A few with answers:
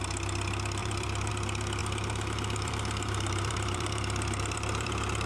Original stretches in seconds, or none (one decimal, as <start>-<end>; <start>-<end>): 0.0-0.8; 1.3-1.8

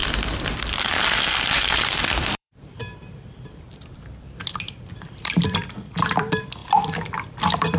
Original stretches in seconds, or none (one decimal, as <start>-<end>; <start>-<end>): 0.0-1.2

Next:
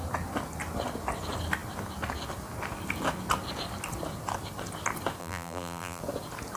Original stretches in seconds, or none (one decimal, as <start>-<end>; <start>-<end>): 0.0-5.2; 6.0-6.6

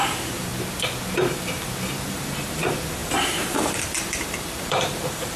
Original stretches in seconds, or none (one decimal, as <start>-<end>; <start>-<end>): 0.5-1.3

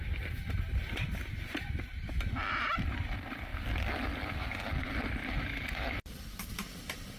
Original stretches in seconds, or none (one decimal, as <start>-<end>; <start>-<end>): 3.5-6.1